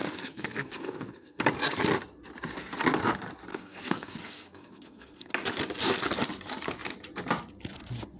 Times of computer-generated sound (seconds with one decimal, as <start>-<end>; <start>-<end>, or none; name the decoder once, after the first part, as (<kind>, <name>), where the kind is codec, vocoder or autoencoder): 0.0-1.4 (codec, SNAC); 3.5-5.3